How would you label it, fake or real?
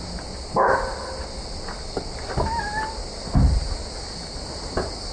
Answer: real